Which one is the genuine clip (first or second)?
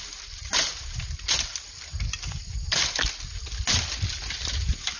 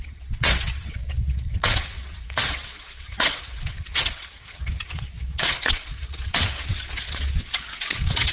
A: first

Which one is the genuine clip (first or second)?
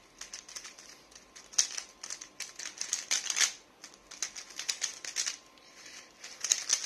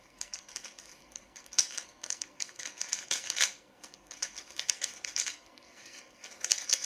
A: first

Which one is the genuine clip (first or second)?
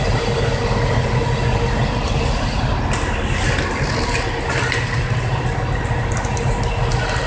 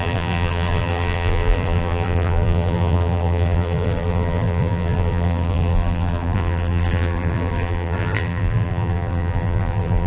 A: first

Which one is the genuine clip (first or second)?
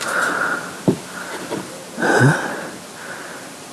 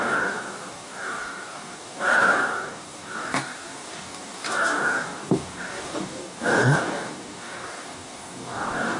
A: first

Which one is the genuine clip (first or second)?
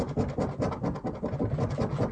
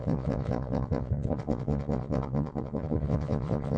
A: first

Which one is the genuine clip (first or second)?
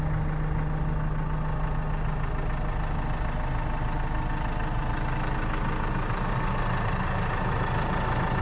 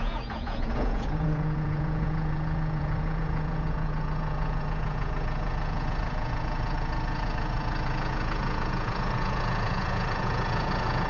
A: first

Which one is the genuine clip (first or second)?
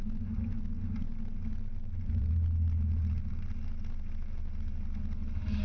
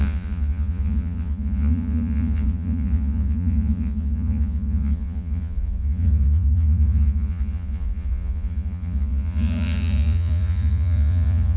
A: first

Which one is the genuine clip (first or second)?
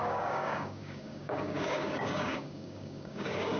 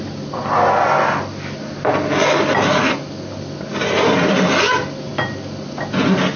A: second